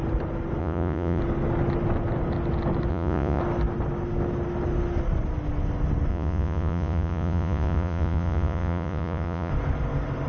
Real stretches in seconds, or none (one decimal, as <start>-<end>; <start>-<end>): 0.0-0.6; 1.2-2.9; 3.4-6.1; 9.5-10.3